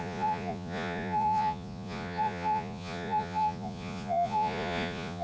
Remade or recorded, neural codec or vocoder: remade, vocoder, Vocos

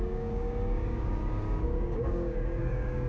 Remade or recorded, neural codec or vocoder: remade, codec, DAC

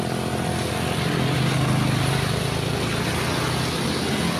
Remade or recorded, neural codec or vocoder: recorded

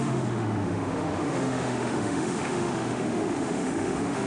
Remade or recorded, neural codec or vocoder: remade, autoencoder, DAC-VAE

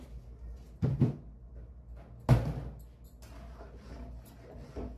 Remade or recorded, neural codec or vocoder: recorded